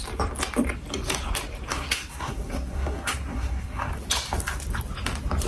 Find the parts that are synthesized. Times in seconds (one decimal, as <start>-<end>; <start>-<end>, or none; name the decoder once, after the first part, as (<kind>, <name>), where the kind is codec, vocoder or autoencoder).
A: 1.7-3.9 (codec, SNAC)